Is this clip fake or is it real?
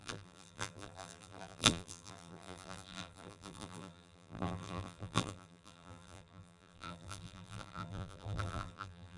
fake